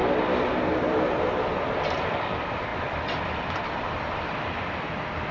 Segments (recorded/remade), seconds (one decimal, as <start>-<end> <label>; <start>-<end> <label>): 0.0-2.7 recorded; 2.7-4.2 remade; 4.2-5.3 recorded